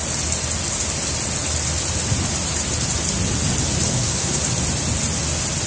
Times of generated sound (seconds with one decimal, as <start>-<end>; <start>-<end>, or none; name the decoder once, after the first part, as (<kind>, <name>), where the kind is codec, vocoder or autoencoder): 3.9-4.4 (codec, SNAC)